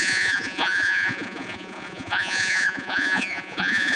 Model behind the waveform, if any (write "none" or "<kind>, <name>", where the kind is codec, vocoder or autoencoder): vocoder, Vocos